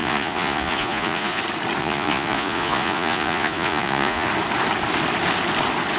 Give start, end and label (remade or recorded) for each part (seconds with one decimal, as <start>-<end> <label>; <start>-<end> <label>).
0.0-1.4 remade; 1.4-1.8 recorded; 1.8-4.3 remade; 4.3-6.0 recorded